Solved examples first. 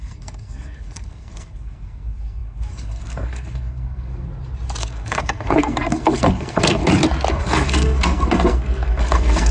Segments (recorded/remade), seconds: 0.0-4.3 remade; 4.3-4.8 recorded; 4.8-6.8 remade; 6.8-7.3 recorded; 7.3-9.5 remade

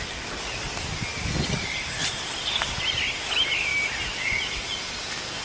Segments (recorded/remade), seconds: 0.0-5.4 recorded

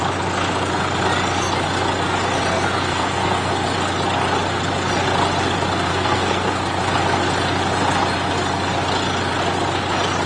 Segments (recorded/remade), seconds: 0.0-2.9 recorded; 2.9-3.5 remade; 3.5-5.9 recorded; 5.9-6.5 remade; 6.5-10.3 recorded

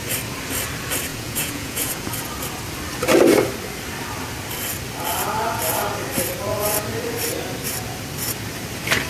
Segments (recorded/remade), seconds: 0.0-1.1 recorded; 1.1-2.1 remade; 2.1-9.1 recorded